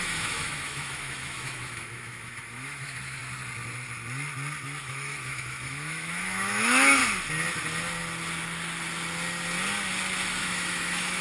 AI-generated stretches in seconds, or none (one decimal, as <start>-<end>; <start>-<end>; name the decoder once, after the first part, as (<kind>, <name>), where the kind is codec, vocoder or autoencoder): 0.0-3.2 (autoencoder, DAC-VAE); 4.8-7.0; 10.4-11.2